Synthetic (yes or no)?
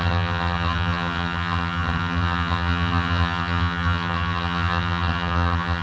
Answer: yes